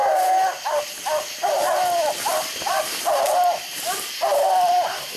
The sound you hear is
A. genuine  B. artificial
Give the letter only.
A